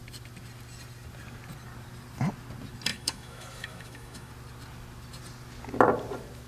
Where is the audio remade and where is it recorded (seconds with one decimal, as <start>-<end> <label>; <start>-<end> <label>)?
0.0-2.9 recorded; 2.9-4.3 remade; 4.3-6.5 recorded

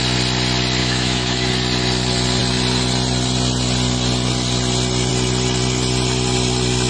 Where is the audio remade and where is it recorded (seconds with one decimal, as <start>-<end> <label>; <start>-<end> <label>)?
0.0-0.8 recorded; 0.8-1.5 remade; 1.5-6.9 recorded

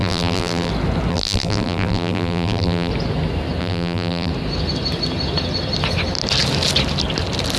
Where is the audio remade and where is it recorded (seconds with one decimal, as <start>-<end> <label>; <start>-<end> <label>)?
0.0-0.7 remade; 0.7-1.1 recorded; 1.1-2.9 remade; 2.9-3.6 recorded; 3.6-4.3 remade; 4.3-7.6 recorded